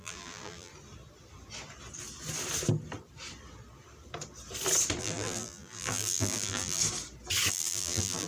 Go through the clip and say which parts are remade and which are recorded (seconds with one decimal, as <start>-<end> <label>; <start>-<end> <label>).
0.0-0.7 remade; 0.7-5.0 recorded; 5.0-6.8 remade; 6.8-7.5 recorded; 7.5-8.3 remade